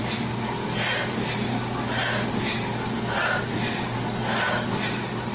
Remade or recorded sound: recorded